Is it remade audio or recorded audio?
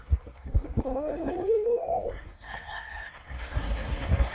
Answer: remade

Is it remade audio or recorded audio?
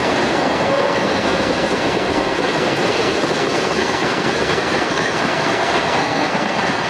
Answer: remade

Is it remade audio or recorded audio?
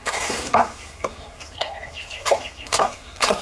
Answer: remade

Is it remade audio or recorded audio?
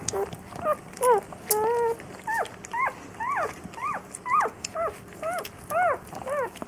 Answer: recorded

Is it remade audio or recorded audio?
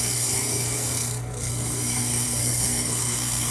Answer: remade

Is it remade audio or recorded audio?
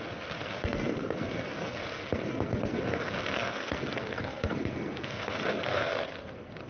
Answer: remade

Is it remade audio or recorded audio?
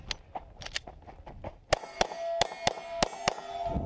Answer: recorded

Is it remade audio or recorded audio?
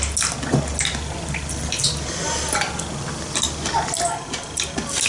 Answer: recorded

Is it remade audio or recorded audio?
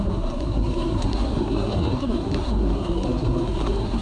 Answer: remade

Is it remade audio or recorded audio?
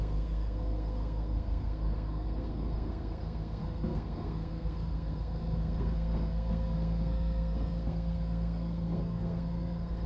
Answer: remade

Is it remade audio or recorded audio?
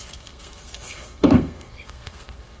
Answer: remade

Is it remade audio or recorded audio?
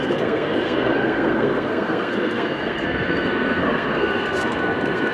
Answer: remade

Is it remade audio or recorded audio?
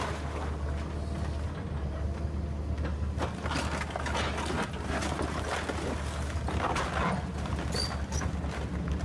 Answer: recorded